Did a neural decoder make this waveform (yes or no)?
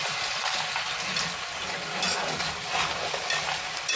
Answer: no